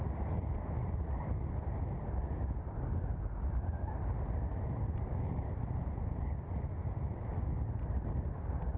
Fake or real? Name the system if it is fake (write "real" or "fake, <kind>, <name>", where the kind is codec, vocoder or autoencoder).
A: real